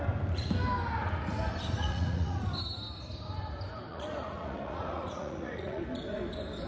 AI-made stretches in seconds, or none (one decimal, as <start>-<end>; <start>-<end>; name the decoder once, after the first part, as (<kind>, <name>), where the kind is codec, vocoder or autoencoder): 1.8-2.4 (vocoder, Vocos); 3.9-5.8